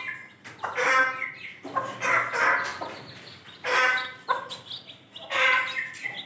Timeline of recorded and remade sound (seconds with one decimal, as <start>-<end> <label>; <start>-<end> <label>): 0.0-6.3 recorded